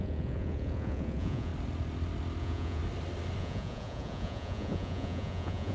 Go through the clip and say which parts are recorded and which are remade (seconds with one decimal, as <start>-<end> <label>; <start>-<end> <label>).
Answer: 0.0-1.5 remade; 1.5-2.4 recorded; 2.4-2.8 remade; 2.8-3.4 recorded; 3.4-5.7 remade